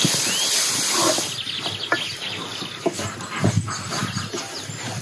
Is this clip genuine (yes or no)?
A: yes